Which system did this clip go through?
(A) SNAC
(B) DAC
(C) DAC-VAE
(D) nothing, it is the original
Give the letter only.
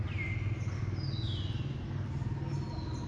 D